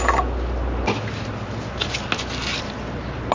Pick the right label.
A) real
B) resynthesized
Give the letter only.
A